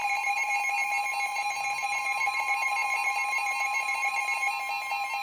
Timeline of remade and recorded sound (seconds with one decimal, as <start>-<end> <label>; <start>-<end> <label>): 0.0-0.5 remade; 0.5-1.3 recorded; 1.3-4.2 remade; 4.2-5.2 recorded